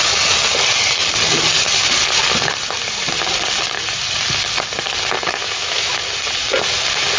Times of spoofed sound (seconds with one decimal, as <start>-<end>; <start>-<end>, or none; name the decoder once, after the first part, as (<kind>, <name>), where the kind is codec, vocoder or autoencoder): 5.4-6.0 (autoencoder, DAC-VAE)